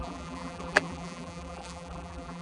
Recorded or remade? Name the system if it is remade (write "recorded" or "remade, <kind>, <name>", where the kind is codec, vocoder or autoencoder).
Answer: remade, vocoder, BigVGAN v2